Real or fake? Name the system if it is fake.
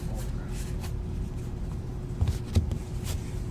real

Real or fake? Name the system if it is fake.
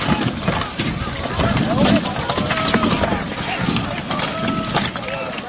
real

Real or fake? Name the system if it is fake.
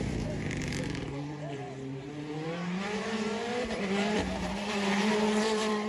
fake, vocoder, BigVGAN v2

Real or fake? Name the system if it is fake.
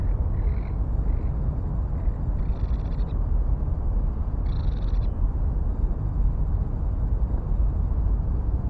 real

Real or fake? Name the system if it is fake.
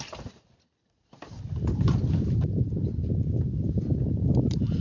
real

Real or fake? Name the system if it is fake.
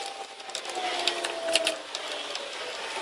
real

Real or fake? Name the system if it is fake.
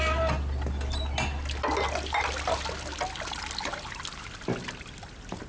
real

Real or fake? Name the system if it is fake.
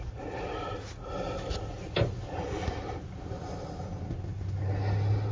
real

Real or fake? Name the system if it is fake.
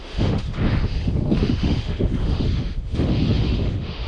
fake, autoencoder, DAC-VAE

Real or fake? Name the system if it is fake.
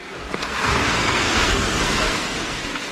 fake, codec, SNAC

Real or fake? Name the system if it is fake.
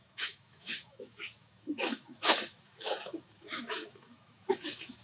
fake, autoencoder, DAC-VAE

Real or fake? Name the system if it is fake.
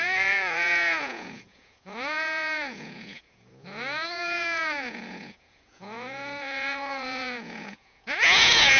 fake, vocoder, Vocos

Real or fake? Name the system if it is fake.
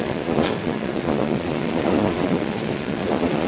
fake, vocoder, Vocos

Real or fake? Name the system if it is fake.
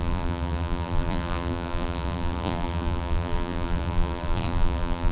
fake, vocoder, BigVGAN v2